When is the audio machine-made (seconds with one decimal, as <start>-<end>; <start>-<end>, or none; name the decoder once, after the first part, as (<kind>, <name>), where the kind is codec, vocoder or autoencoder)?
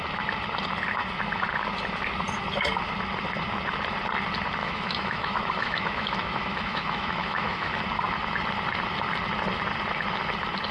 4.6-7.8 (autoencoder, DAC-VAE)